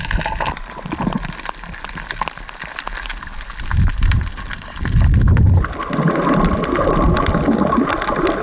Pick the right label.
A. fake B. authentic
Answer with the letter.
B